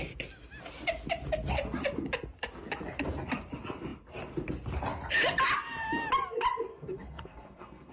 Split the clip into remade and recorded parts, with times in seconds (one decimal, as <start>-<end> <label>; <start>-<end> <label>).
0.0-6.7 recorded; 6.7-7.9 remade